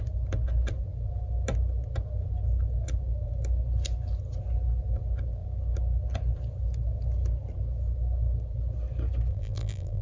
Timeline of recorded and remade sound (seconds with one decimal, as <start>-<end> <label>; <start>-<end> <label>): 0.0-9.3 recorded; 9.3-10.0 remade